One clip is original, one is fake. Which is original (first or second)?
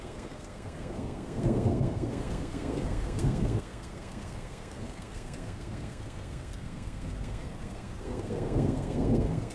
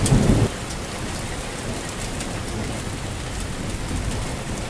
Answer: second